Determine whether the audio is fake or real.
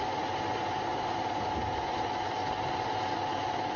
real